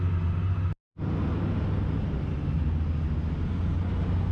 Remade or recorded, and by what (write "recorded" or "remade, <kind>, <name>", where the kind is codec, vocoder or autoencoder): recorded